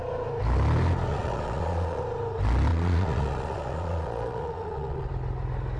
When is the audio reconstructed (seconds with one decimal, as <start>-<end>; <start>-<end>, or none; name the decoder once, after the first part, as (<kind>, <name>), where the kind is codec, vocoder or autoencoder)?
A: 1.1-2.0 (vocoder, Vocos); 2.7-5.1